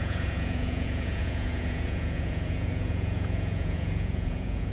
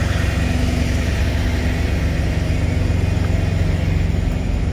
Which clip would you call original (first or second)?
second